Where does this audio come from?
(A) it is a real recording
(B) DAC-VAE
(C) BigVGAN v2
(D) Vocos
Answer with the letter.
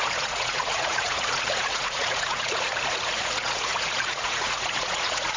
D